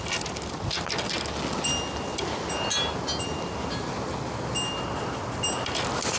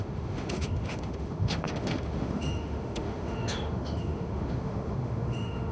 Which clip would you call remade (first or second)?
second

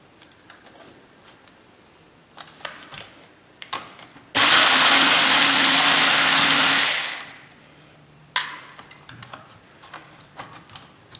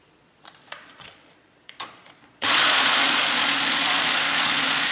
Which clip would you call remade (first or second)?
second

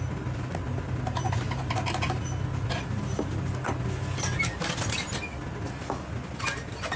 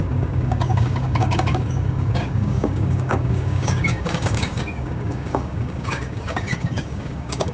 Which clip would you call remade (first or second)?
second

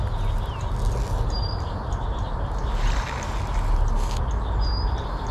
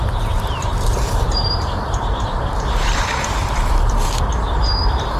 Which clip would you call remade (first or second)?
second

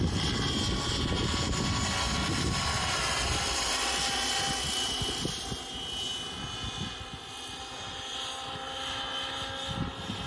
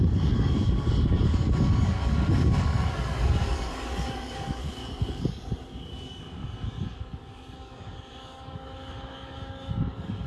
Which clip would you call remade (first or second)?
second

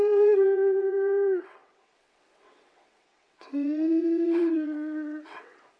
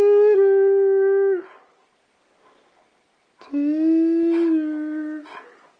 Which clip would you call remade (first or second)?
first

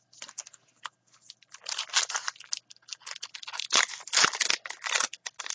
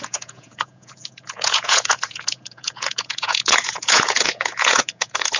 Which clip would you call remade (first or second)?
second